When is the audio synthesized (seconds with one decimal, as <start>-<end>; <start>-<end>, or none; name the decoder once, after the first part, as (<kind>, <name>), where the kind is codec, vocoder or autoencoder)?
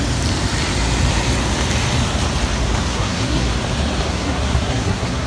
2.9-3.5 (codec, SNAC); 4.1-5.3